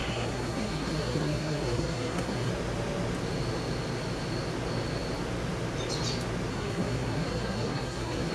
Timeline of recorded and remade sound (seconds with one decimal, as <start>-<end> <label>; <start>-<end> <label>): 0.0-2.5 remade; 2.5-6.5 recorded; 6.5-8.3 remade